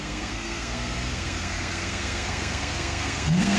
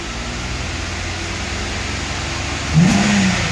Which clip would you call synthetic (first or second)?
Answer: first